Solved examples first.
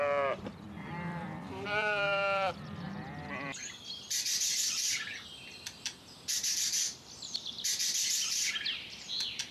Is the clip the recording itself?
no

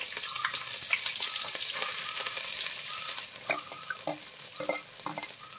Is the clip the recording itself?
yes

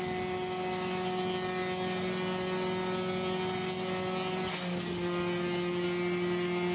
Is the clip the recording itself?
yes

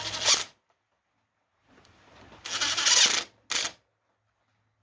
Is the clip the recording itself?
yes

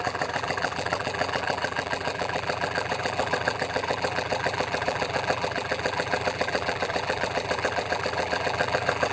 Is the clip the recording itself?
no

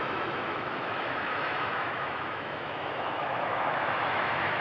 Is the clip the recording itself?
no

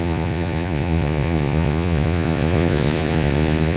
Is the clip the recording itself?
no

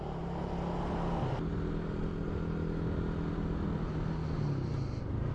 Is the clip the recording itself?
yes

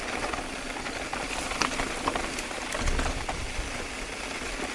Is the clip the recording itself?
yes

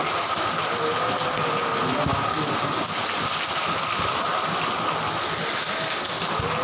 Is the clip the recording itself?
yes